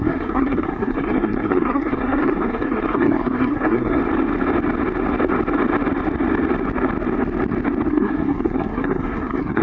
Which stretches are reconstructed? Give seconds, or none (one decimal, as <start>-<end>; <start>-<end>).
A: 0.0-4.0; 7.9-9.6